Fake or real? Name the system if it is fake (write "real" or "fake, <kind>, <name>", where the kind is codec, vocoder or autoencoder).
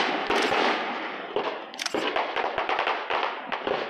fake, vocoder, BigVGAN v2